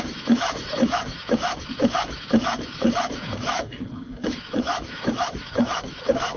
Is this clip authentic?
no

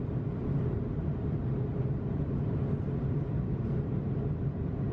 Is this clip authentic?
yes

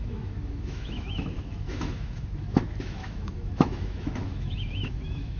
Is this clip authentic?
no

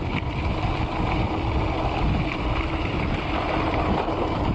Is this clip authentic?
yes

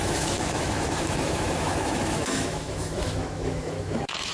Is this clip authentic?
no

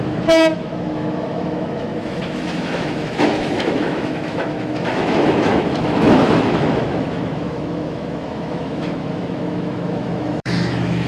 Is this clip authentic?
no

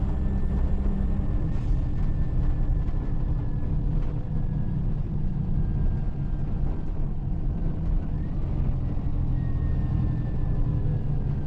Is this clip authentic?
yes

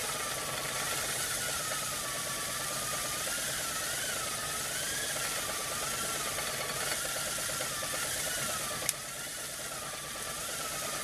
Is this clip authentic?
yes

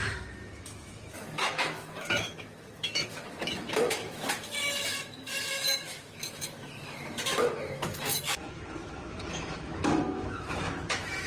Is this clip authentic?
no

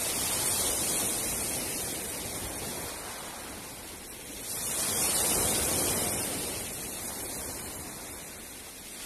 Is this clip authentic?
yes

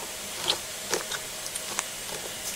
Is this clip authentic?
yes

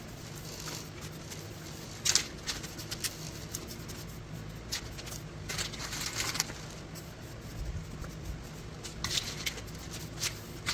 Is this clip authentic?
yes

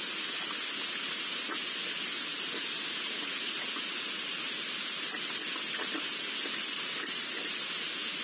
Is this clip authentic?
yes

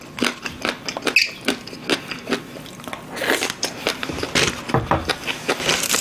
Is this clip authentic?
yes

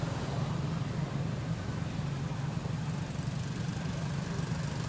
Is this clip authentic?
yes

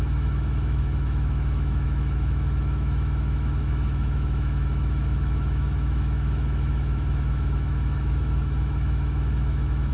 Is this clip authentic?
no